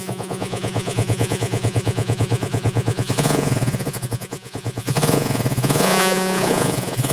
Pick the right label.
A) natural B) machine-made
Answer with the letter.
B